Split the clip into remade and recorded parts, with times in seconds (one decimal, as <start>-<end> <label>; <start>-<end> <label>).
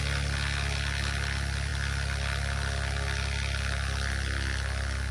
0.0-5.1 recorded